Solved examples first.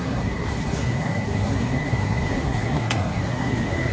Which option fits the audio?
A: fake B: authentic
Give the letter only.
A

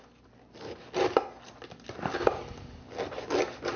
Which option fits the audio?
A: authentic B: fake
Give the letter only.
A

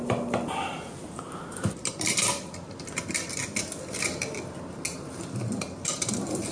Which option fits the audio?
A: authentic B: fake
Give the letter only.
A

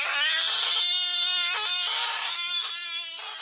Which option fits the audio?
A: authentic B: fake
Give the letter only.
A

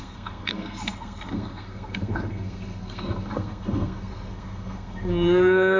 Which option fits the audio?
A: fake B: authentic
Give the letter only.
A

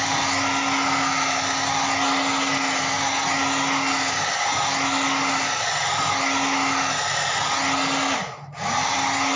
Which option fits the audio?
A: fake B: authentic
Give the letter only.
B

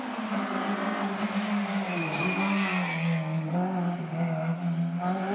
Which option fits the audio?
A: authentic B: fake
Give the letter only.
A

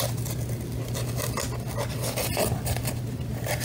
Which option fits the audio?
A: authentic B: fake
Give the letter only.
A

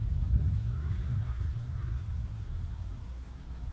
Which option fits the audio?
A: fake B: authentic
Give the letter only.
A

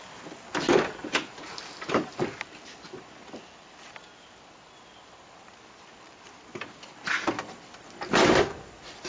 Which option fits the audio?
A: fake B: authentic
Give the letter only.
B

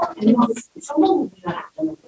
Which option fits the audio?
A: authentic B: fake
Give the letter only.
A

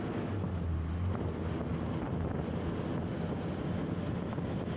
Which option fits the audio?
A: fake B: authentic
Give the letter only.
B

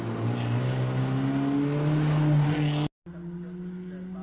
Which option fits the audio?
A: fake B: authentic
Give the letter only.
B